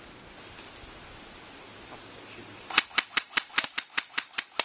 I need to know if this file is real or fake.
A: real